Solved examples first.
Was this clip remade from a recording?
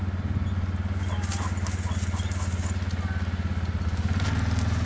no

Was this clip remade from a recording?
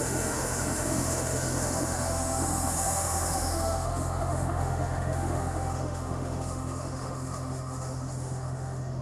yes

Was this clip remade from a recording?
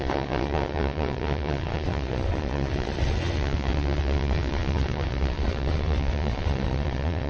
yes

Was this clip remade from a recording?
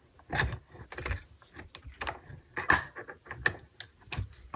no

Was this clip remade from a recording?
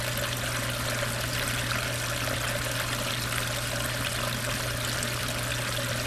no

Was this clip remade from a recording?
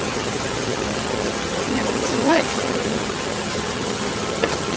yes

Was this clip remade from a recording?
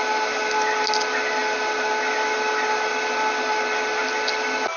no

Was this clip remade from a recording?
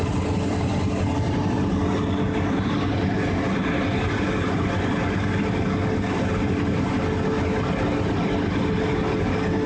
no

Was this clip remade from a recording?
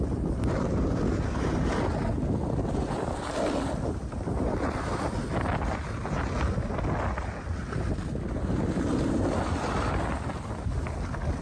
no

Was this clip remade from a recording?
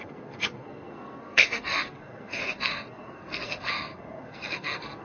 yes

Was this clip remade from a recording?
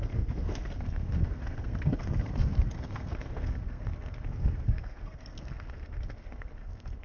yes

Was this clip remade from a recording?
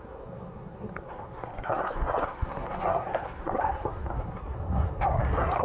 yes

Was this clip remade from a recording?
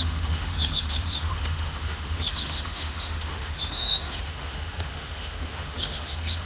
yes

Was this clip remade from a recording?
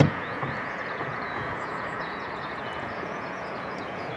yes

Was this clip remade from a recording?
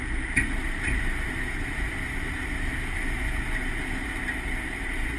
no